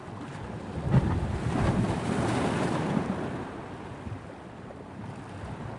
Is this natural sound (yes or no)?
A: yes